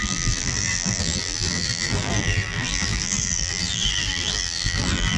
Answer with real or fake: fake